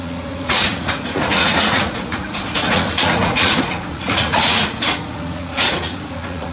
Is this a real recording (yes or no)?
no